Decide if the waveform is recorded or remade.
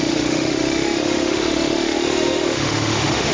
remade